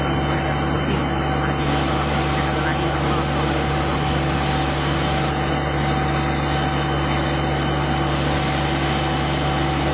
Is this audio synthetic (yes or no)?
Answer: no